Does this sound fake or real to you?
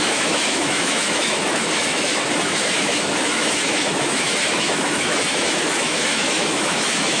fake